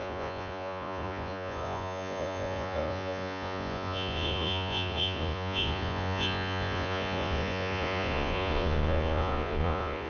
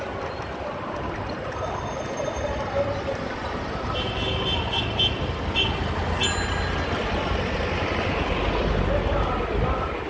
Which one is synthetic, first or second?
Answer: first